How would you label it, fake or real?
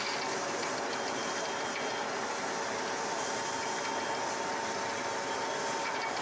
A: real